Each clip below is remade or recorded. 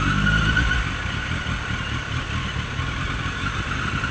recorded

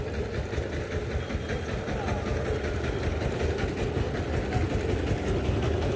recorded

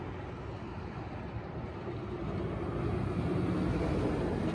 recorded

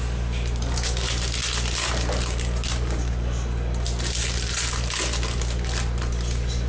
recorded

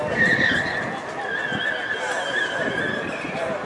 recorded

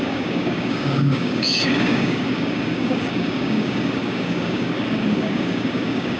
remade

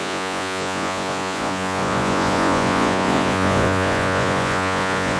remade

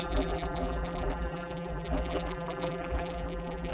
remade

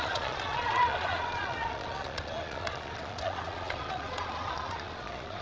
remade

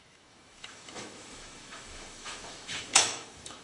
remade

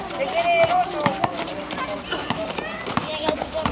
recorded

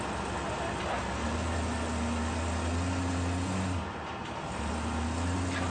recorded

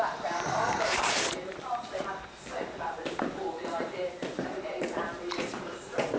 remade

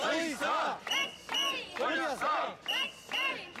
recorded